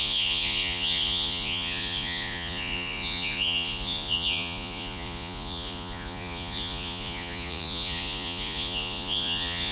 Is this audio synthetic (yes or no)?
yes